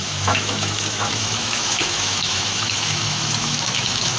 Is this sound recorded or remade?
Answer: remade